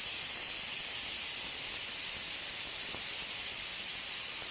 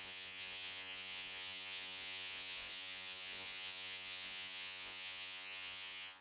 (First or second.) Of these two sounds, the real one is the first